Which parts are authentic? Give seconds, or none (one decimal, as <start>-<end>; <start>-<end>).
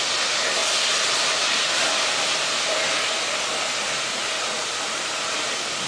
0.0-3.8; 5.5-5.9